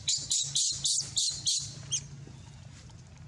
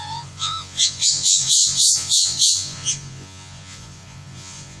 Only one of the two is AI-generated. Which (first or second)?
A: second